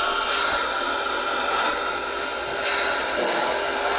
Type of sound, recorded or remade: recorded